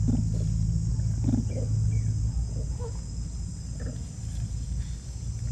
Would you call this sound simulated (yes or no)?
no